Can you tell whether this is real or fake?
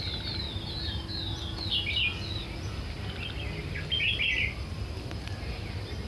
real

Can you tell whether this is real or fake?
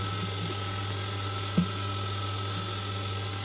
real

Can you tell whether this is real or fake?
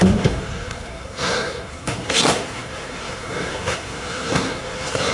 fake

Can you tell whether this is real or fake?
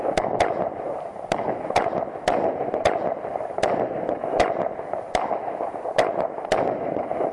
real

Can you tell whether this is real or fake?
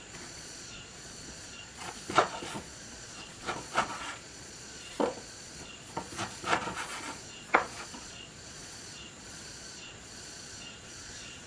fake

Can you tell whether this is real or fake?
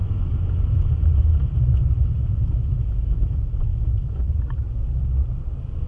fake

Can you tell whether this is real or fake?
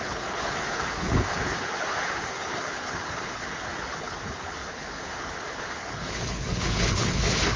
fake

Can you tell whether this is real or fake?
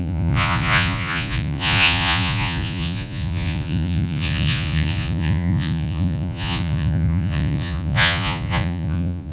fake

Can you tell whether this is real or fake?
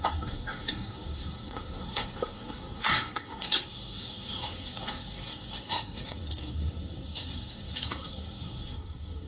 fake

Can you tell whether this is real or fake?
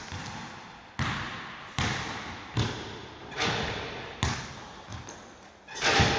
real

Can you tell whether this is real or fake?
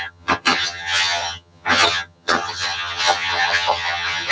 fake